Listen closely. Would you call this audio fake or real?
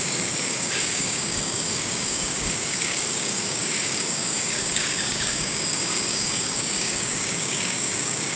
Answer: fake